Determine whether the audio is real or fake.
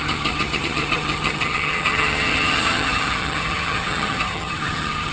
fake